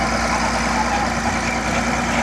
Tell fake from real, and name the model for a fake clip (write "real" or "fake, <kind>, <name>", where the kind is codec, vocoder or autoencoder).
real